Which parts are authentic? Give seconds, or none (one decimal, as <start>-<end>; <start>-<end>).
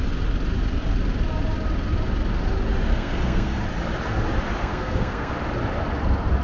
0.0-2.9; 3.6-4.6; 5.3-6.4